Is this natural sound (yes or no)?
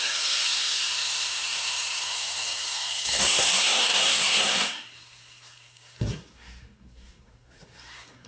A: no